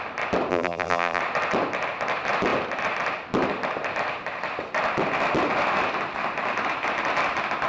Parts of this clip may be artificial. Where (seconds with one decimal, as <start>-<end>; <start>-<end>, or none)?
0.5-1.2